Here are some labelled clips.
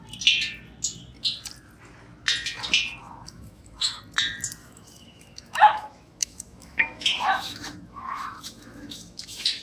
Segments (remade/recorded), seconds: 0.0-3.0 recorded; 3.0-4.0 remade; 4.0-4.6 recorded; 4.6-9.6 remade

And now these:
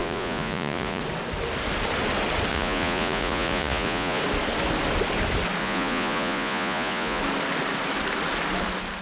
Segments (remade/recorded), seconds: 0.0-1.0 remade; 1.0-2.5 recorded; 2.5-4.2 remade; 4.2-5.6 recorded; 5.6-7.2 remade; 7.2-9.0 recorded

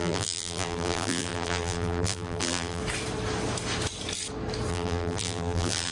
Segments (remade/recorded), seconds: 0.0-2.8 remade; 2.8-4.7 recorded; 4.7-5.9 remade

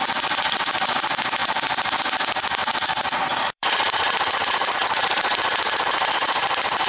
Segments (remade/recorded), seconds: 0.0-1.4 recorded; 1.4-2.0 remade; 2.0-2.6 recorded; 2.6-6.4 remade; 6.4-6.9 recorded

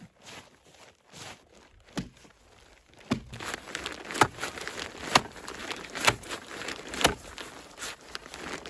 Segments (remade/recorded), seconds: 0.0-5.6 recorded; 5.6-7.3 remade; 7.3-8.7 recorded

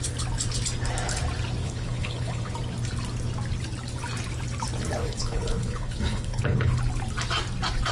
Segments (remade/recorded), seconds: 0.0-1.6 recorded; 1.6-2.5 remade; 2.5-5.0 recorded; 5.0-6.7 remade; 6.7-7.9 recorded

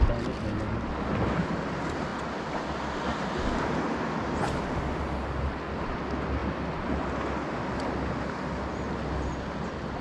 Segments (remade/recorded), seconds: 0.0-10.0 recorded